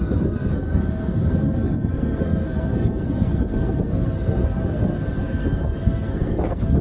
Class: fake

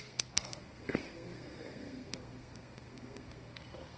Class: fake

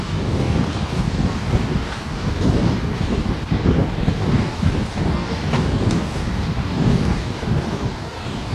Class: fake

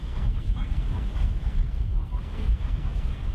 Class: fake